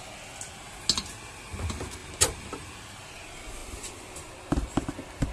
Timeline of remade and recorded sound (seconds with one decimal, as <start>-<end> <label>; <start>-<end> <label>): 0.0-2.0 recorded; 2.0-2.7 remade; 2.7-5.3 recorded